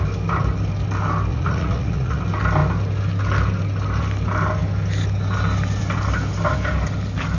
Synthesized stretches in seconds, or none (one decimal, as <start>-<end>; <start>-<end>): 1.3-2.2